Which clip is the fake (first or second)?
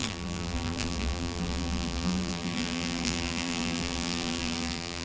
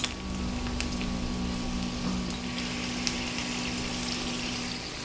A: first